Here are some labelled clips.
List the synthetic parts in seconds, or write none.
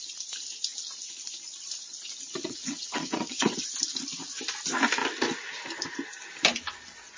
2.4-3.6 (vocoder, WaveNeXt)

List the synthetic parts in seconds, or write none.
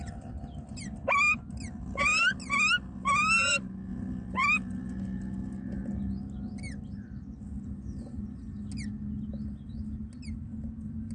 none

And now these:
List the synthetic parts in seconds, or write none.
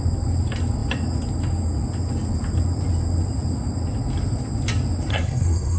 5.1-5.8 (codec, SNAC)